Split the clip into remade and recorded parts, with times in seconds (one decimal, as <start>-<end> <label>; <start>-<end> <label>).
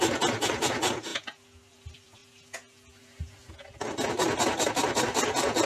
0.0-1.1 remade; 1.1-1.7 recorded; 1.7-2.2 remade; 2.2-4.7 recorded; 4.7-5.7 remade